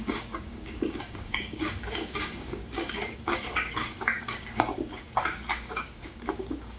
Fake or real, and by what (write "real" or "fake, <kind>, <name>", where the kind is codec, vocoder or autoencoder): fake, codec, DAC